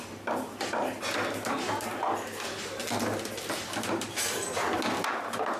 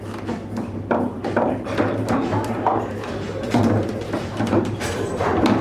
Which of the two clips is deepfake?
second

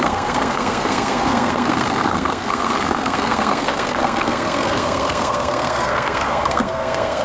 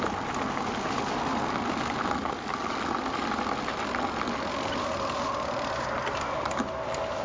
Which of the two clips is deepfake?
first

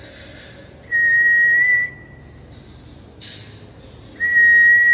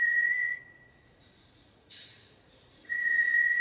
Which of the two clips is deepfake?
second